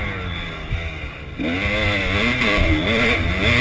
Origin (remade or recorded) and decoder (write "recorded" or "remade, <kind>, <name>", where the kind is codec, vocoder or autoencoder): recorded